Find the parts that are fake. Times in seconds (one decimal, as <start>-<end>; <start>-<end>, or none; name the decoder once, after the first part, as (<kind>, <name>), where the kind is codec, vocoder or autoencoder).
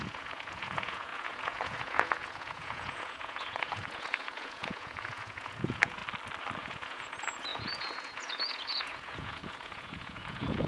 0.0-6.0 (vocoder, Vocos); 6.6-10.7